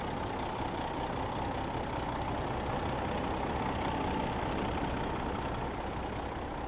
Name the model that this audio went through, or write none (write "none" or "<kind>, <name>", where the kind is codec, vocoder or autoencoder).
none